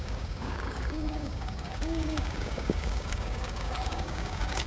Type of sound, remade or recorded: remade